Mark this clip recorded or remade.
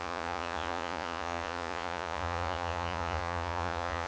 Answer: remade